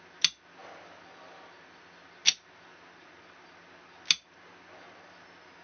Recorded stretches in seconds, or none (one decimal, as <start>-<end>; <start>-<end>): 0.0-5.6